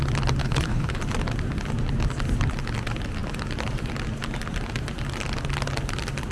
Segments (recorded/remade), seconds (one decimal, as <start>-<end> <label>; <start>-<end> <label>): 0.0-0.4 recorded; 0.4-1.0 remade; 1.0-6.3 recorded